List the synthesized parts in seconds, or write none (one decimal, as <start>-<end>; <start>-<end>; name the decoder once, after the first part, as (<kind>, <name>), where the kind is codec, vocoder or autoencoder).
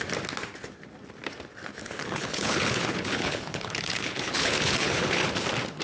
1.8-5.3 (codec, HILCodec)